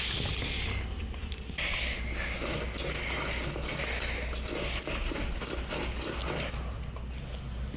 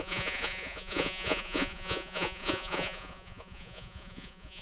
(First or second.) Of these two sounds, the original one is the first